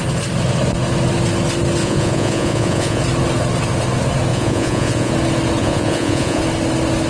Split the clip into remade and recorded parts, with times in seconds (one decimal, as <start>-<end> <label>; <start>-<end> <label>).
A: 0.0-1.8 recorded; 1.8-3.0 remade; 3.0-4.3 recorded; 4.3-5.1 remade; 5.1-5.6 recorded; 5.6-6.4 remade; 6.4-7.1 recorded